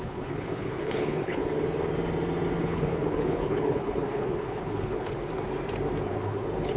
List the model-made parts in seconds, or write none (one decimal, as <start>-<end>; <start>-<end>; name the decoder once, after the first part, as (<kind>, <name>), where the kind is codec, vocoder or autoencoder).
0.0-1.4 (codec, HILCodec); 2.6-5.3; 6.1-6.8